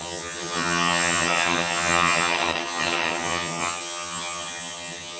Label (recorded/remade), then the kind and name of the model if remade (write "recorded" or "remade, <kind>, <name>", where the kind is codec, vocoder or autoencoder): remade, vocoder, HiFi-GAN